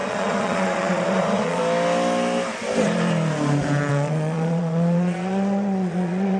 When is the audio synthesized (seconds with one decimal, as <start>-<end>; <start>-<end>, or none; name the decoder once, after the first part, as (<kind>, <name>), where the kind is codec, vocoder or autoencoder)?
0.0-1.6 (vocoder, Vocos); 3.9-6.4